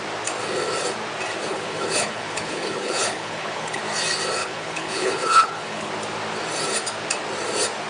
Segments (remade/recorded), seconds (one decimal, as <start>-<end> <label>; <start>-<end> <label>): 0.0-1.5 recorded; 1.5-3.8 remade; 3.8-4.4 recorded; 4.4-5.9 remade; 5.9-7.9 recorded